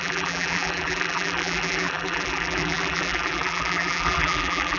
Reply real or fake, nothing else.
fake